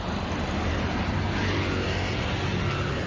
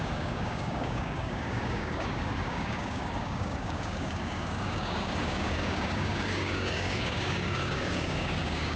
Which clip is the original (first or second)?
first